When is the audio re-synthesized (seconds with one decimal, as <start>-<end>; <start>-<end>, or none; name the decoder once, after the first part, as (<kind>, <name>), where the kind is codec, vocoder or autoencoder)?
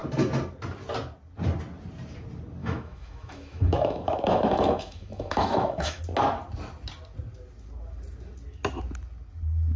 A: 2.6-6.0 (autoencoder, DAC-VAE)